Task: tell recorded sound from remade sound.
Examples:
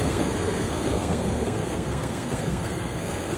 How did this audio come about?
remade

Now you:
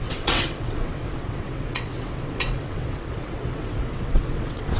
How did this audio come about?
remade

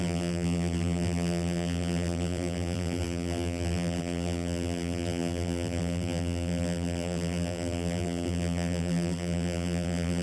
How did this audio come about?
remade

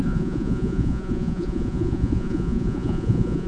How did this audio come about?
remade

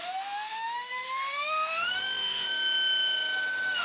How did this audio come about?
remade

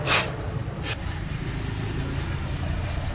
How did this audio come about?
recorded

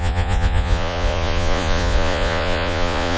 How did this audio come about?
remade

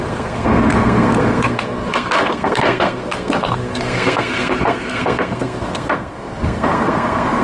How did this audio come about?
remade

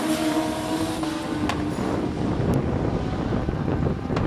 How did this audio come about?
recorded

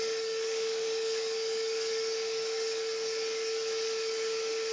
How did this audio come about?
remade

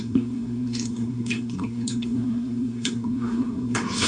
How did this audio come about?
remade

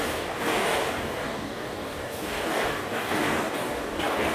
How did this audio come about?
remade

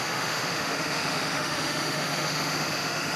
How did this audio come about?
remade